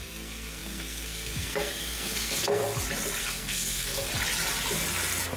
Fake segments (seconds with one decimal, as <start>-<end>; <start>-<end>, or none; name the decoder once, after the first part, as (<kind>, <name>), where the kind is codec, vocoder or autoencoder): 0.0-2.6 (codec, SNAC); 3.2-4.1